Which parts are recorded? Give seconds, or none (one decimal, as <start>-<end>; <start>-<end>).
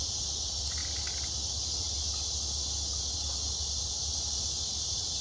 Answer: 0.0-5.2